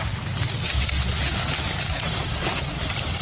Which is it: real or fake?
fake